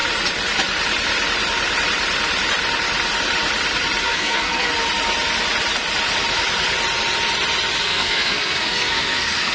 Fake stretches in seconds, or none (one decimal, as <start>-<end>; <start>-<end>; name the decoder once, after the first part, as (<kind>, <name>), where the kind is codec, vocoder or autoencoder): 4.0-4.7 (codec, SNAC); 7.8-9.5